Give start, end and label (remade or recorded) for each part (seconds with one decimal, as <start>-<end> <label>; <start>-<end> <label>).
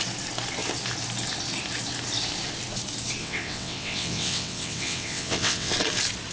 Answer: 0.0-3.2 recorded; 3.2-5.7 remade; 5.7-6.3 recorded